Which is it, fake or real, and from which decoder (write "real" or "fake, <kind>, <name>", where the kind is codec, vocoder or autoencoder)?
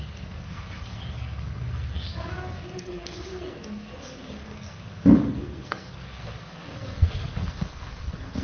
fake, codec, SNAC